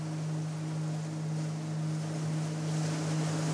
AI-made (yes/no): no